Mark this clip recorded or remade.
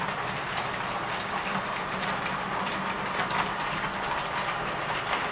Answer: recorded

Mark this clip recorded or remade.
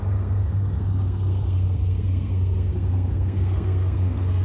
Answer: remade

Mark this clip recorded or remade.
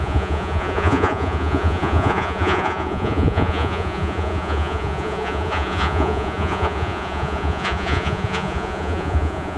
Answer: remade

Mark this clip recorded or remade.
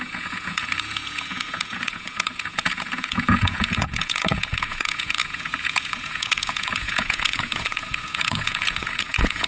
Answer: remade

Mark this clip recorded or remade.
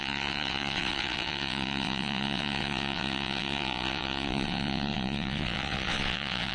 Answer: remade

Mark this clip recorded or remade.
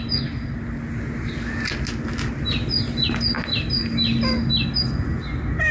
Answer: recorded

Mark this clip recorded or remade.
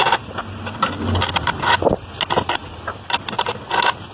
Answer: recorded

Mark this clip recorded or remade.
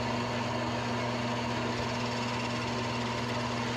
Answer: recorded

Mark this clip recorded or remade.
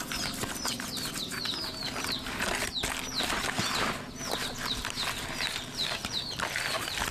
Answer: recorded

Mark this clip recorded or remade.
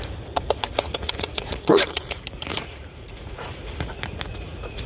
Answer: remade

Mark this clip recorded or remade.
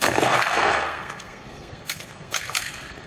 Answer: remade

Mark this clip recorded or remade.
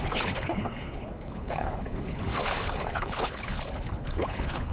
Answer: remade